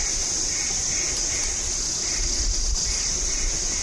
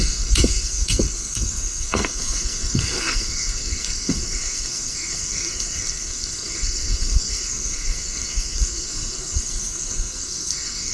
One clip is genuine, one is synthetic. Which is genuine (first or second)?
first